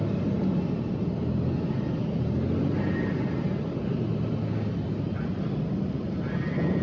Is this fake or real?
real